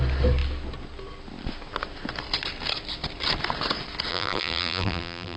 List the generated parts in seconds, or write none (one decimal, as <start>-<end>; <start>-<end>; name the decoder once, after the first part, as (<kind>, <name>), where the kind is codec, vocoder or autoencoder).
4.1-5.4 (vocoder, BigVGAN v2)